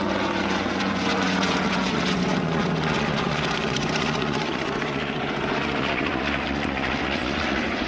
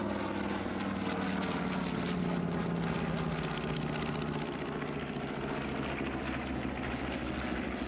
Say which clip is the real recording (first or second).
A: second